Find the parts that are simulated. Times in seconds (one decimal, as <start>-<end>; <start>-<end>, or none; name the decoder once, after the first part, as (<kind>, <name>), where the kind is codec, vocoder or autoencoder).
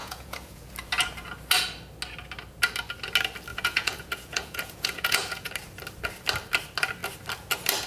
0.0-0.7 (vocoder, Vocos); 3.5-5.5